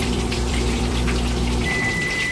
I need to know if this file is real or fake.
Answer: fake